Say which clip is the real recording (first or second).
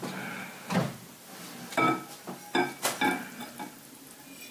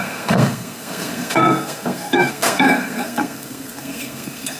first